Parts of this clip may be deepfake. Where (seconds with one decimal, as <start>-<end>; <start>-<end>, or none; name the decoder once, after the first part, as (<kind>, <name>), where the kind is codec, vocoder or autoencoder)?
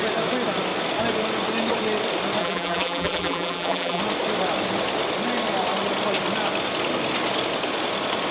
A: 2.4-4.0 (vocoder, BigVGAN v2)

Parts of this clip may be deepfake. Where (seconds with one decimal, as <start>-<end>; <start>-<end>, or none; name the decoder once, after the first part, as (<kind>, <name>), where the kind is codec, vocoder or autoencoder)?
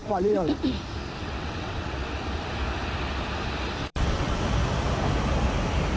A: 0.0-0.5 (vocoder, WaveNeXt); 1.2-2.1; 3.8-4.4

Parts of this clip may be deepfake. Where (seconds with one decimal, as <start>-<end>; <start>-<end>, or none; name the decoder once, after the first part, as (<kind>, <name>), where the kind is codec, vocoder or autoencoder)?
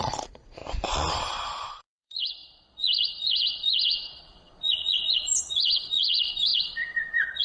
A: 0.0-0.6 (vocoder, Vocos); 1.1-7.4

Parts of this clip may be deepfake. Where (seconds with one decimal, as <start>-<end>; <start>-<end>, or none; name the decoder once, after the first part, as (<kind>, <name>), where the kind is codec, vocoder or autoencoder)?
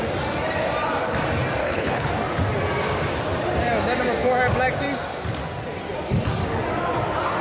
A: 1.6-2.1 (codec, HILCodec)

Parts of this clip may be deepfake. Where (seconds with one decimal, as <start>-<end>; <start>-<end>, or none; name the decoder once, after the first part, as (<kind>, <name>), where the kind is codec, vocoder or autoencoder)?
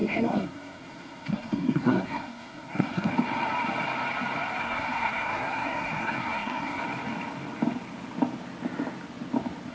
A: 0.0-3.1 (codec, SNAC); 4.6-6.8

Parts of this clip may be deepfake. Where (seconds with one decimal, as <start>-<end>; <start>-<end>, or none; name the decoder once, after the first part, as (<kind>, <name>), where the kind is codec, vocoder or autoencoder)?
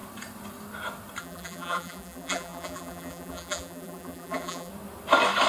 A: 1.2-4.7 (vocoder, BigVGAN v2)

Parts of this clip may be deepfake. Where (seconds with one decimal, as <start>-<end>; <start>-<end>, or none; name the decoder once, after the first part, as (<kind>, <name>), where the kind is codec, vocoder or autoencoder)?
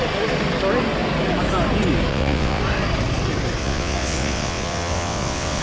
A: 2.1-2.6 (vocoder, WaveNeXt); 3.6-5.6